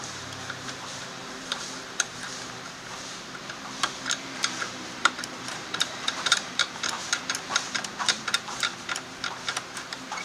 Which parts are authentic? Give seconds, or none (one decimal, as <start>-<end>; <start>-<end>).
8.7-9.6